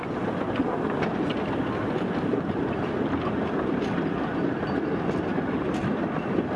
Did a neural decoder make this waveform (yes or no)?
no